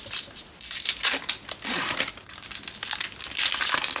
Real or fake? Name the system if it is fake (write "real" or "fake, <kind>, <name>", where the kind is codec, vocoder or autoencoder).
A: real